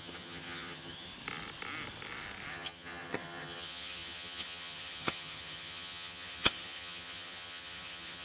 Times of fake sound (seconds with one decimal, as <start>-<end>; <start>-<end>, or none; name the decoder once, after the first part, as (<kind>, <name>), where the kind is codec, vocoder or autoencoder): 0.0-1.1 (vocoder, HiFi-GAN); 2.5-8.2